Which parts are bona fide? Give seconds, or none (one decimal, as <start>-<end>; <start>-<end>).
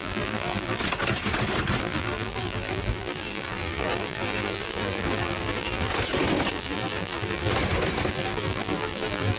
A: 0.8-1.8; 5.9-6.5; 7.5-8.1